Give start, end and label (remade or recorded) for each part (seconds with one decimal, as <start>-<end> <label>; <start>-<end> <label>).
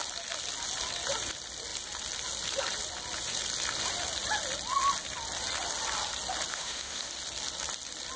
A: 0.0-6.5 recorded; 6.5-7.1 remade; 7.1-8.2 recorded